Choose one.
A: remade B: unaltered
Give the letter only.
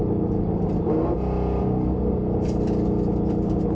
B